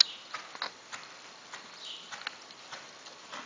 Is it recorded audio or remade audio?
recorded